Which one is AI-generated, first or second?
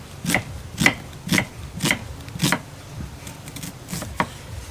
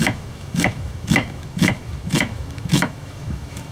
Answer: second